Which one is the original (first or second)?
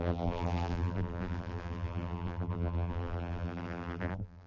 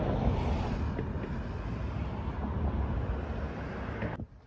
second